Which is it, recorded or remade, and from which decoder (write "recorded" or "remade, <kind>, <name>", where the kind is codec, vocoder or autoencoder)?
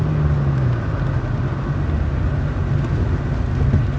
recorded